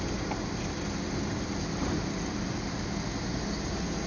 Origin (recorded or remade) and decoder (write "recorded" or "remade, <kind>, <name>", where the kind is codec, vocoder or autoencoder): recorded